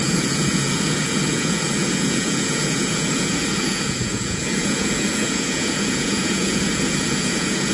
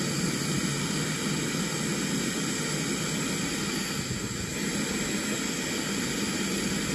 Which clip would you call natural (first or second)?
second